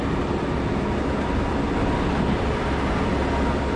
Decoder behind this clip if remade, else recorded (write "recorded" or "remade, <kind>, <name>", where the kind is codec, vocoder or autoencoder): recorded